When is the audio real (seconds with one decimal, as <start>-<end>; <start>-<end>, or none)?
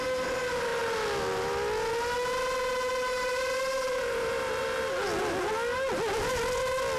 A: 0.0-3.1; 4.8-7.0